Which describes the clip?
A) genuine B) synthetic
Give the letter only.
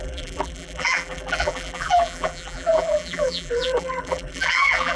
B